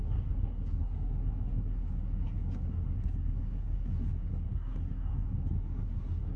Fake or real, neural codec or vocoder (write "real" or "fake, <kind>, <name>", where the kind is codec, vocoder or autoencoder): fake, codec, SNAC